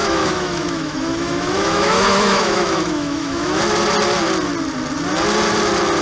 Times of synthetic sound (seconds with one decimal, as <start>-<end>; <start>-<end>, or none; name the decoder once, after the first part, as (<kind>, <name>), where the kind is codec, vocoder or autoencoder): 0.0-3.6 (autoencoder, DAC-VAE)